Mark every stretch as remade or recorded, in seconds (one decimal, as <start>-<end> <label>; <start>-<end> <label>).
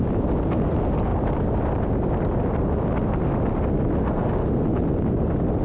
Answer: 0.0-5.6 recorded